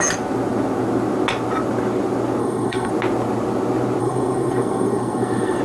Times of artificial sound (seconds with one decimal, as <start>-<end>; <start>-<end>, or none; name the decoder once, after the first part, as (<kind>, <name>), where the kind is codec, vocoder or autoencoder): 2.4-2.9 (codec, SNAC); 4.0-5.6